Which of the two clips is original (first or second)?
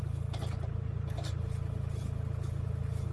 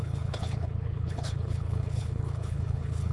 first